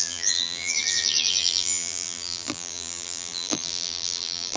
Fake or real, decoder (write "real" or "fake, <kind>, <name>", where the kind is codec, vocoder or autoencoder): fake, vocoder, BigVGAN v2